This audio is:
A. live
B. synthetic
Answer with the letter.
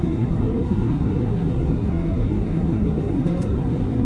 B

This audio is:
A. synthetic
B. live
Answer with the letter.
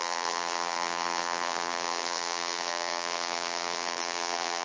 A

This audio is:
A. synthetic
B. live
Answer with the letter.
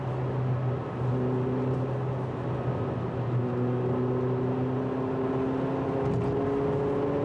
B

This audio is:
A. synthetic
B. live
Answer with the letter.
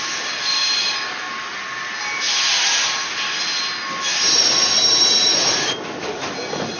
B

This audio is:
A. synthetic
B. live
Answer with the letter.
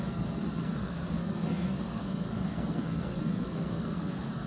A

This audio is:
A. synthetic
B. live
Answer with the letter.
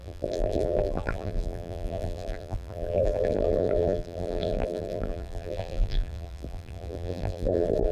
A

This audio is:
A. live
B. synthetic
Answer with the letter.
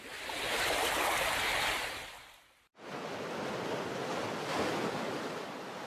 A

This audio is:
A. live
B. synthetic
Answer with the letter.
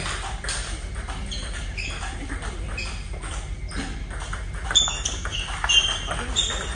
A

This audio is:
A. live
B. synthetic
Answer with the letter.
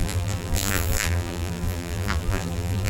B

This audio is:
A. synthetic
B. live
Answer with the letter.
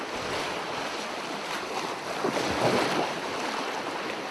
B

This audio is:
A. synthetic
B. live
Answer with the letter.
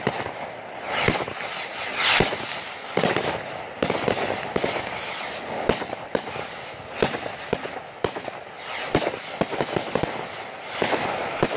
B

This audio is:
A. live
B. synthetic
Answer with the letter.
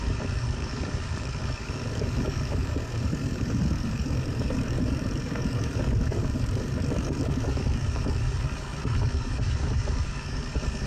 B